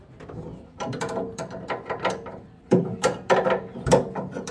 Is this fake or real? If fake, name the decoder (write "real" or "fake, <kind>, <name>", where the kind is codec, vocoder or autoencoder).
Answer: fake, vocoder, BigVGAN v2